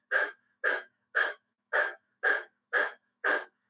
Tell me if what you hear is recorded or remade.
remade